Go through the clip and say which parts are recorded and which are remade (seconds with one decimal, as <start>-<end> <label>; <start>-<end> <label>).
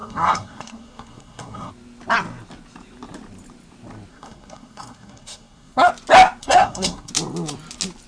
0.0-1.7 remade; 1.7-4.1 recorded; 4.1-5.9 remade; 5.9-6.4 recorded; 6.4-7.1 remade; 7.1-8.1 recorded